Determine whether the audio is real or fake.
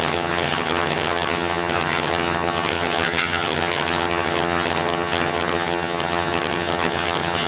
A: fake